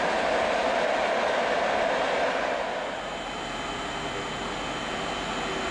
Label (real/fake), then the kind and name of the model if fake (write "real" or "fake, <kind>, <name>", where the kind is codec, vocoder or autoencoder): real